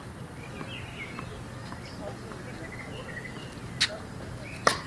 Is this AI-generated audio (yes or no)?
no